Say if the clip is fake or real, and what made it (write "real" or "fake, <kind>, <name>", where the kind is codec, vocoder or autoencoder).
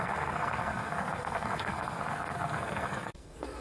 fake, codec, SNAC